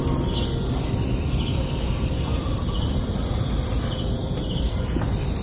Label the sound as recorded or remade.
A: recorded